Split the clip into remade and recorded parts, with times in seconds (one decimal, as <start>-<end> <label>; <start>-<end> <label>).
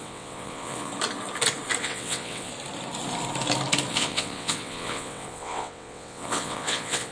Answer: 0.0-0.9 remade; 0.9-1.8 recorded; 1.8-2.5 remade; 2.5-3.9 recorded; 3.9-7.1 remade